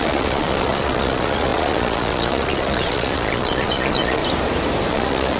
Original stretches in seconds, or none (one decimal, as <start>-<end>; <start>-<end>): 4.2-4.9